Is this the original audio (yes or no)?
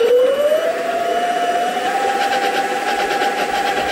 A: no